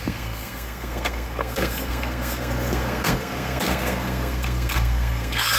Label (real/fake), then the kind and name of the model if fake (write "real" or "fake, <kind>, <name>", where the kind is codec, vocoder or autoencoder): fake, codec, SNAC